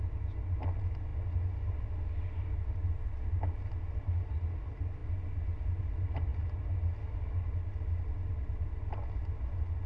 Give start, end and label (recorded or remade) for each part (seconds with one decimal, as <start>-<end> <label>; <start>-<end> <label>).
0.0-9.9 recorded